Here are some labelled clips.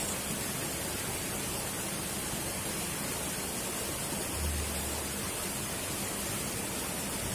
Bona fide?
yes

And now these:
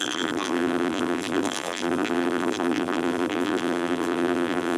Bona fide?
no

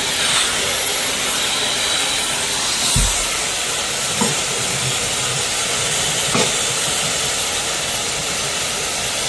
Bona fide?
no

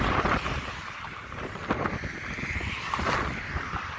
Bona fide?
yes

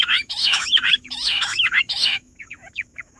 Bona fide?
no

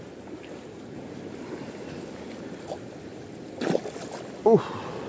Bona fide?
yes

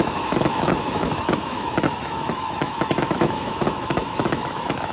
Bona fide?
no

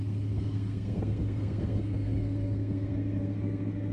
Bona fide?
no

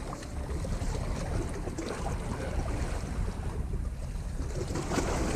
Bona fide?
yes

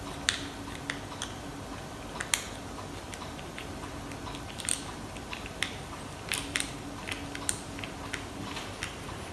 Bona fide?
yes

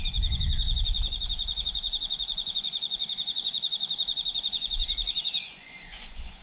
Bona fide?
no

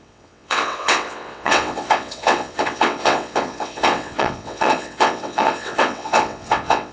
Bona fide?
no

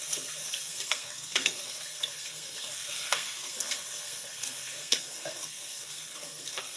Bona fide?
no